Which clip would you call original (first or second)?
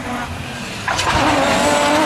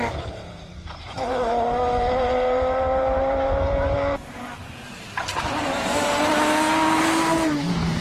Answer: first